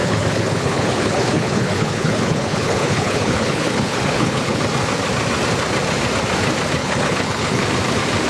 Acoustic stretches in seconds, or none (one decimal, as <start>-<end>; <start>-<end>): 4.6-6.8; 7.7-8.3